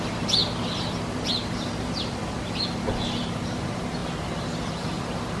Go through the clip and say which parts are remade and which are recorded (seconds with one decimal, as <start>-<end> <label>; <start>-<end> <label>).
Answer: 0.0-0.4 remade; 0.4-3.6 recorded; 3.6-5.4 remade